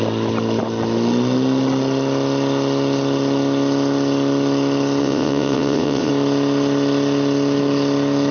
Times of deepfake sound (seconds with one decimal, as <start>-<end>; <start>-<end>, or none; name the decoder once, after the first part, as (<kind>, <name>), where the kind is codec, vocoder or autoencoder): 5.0-6.1 (vocoder, WaveNeXt)

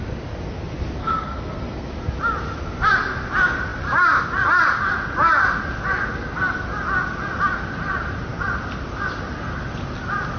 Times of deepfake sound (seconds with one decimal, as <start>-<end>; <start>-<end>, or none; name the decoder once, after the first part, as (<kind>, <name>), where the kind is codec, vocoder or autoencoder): 1.0-1.9 (codec, SNAC)

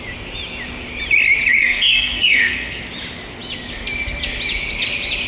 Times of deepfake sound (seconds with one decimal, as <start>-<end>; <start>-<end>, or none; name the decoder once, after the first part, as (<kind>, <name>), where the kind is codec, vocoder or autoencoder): 1.5-2.8 (codec, SNAC)

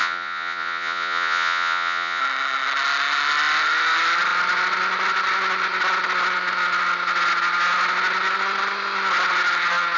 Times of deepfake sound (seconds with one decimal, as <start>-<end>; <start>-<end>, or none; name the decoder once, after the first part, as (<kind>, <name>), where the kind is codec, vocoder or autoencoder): 0.0-2.2 (vocoder, Vocos)

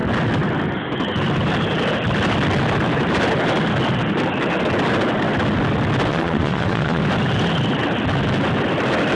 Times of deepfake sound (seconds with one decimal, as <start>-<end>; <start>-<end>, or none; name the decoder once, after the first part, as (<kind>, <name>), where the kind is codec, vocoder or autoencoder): 6.1-7.0 (vocoder, Vocos)